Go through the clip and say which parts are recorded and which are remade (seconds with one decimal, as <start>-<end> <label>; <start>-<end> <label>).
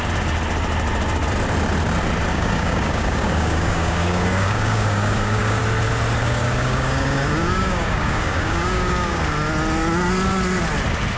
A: 0.0-2.3 recorded; 2.3-5.6 remade; 5.6-6.2 recorded; 6.2-9.2 remade; 9.2-11.2 recorded